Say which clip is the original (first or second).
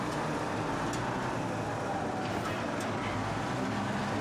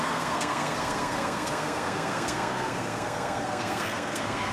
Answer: first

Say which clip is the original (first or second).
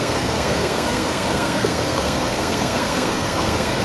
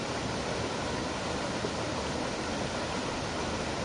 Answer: second